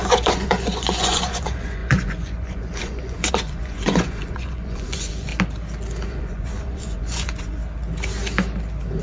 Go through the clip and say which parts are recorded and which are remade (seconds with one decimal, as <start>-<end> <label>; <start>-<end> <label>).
0.0-5.3 remade; 5.3-6.1 recorded; 6.1-7.6 remade; 7.6-9.0 recorded